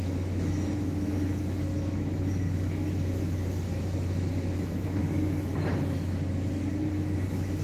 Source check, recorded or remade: remade